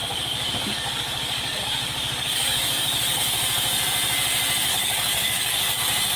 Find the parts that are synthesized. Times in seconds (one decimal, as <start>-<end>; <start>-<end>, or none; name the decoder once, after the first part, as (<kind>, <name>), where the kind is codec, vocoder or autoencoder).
0.0-3.2 (codec, DAC); 4.7-5.8